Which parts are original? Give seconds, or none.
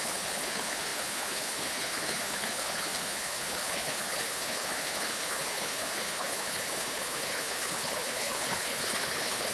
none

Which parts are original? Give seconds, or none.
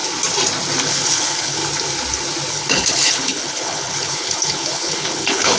0.0-0.9; 1.6-2.5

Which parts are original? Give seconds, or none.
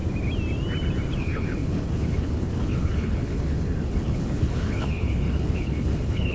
0.0-1.2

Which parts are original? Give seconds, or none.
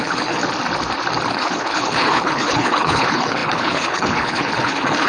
0.4-1.3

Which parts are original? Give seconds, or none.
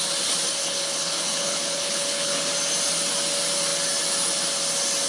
0.0-0.6; 2.5-5.1